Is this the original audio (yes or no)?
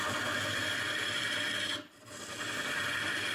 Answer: yes